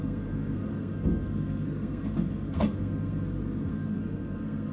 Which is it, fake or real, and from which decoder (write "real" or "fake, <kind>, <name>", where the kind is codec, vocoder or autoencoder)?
fake, codec, SNAC